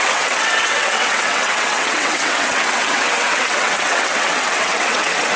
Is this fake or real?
fake